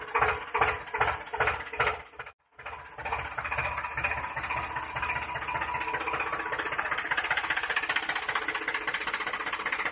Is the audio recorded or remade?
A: recorded